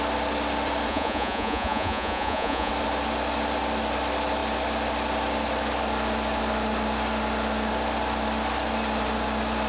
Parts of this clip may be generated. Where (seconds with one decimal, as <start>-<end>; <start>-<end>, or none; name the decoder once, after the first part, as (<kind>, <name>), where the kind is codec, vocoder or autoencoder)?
0.9-2.7 (vocoder, Vocos)